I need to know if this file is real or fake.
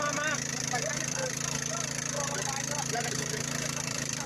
fake